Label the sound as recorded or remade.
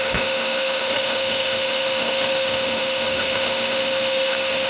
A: remade